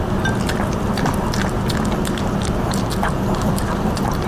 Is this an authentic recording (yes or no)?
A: yes